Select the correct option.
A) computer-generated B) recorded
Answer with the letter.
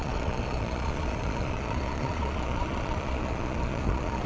A